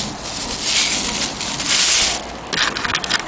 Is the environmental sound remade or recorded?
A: recorded